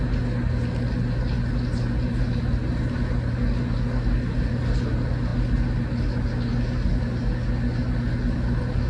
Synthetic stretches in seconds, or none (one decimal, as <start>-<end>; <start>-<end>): none